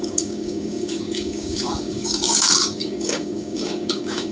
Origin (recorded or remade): remade